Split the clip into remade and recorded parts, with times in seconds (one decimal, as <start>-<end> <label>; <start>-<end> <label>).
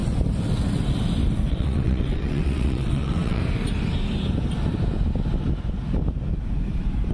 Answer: 0.0-1.5 recorded; 1.5-3.4 remade; 3.4-7.1 recorded